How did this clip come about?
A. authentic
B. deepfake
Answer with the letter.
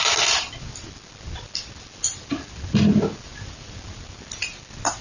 A